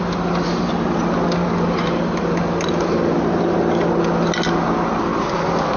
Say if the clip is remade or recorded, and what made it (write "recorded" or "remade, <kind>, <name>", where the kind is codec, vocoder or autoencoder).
recorded